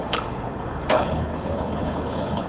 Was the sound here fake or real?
fake